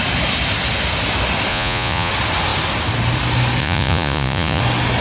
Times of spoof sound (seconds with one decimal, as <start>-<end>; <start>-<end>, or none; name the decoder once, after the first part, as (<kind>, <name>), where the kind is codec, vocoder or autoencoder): 1.5-2.1 (vocoder, Vocos); 3.6-4.6

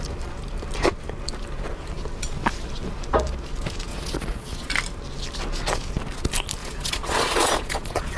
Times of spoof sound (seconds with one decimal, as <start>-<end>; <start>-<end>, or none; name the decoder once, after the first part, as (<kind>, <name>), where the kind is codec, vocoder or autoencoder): 3.9-4.7 (vocoder, Vocos); 6.6-8.2